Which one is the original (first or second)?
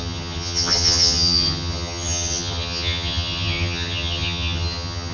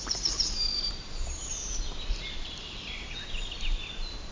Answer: second